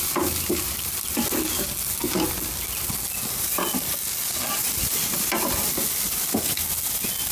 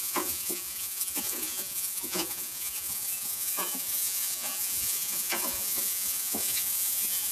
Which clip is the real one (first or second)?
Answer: first